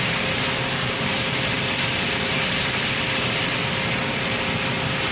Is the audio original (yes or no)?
yes